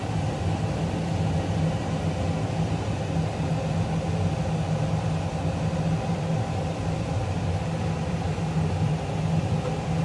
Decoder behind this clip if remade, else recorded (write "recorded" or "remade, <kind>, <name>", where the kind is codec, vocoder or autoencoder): recorded